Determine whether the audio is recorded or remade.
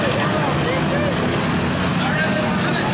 recorded